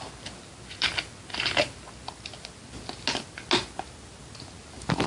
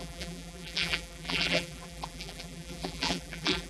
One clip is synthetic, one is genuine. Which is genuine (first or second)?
first